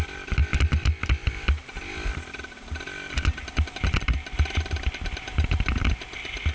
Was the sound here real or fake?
real